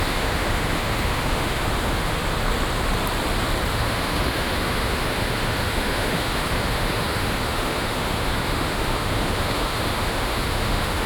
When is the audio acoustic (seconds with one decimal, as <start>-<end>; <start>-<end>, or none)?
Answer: 2.2-3.7